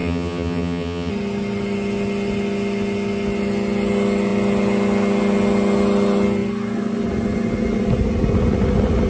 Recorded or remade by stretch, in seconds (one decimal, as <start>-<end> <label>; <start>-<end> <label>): 0.0-1.1 remade; 1.1-9.1 recorded

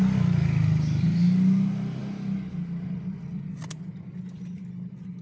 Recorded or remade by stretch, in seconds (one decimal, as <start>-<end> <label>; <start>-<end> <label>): 0.0-5.2 recorded

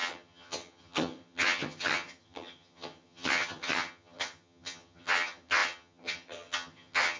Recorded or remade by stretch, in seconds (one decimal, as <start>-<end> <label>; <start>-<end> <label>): 0.0-7.2 remade

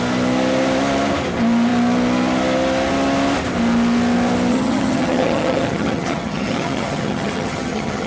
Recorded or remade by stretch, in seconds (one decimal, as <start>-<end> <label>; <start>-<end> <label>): 0.0-4.5 recorded; 4.5-8.1 remade

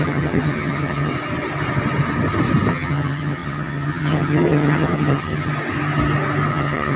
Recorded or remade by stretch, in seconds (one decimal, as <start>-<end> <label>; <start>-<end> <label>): 0.0-1.1 remade; 1.1-2.7 recorded; 2.7-5.5 remade; 5.5-6.5 recorded; 6.5-7.0 remade

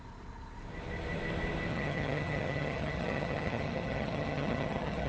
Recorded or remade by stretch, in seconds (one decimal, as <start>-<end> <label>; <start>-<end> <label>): 0.0-1.7 recorded; 1.7-5.1 remade

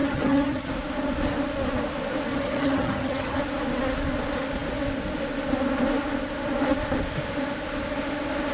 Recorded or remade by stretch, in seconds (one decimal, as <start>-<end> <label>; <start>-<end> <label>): 0.0-0.7 remade; 0.7-2.3 recorded; 2.3-3.4 remade; 3.4-8.5 recorded

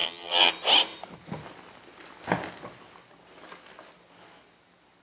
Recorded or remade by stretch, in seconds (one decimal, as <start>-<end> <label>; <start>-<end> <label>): 0.0-0.5 remade; 0.5-5.0 recorded